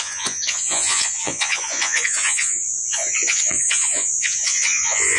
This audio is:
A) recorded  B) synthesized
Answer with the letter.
B